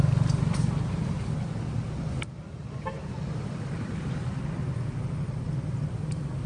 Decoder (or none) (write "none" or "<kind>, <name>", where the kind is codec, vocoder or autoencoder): none